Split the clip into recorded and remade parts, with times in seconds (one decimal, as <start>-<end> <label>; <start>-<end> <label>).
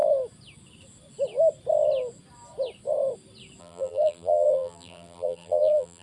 0.0-3.6 recorded; 3.6-6.0 remade